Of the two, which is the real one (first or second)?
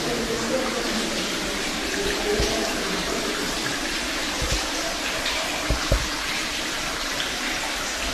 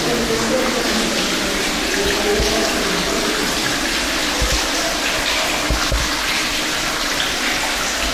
second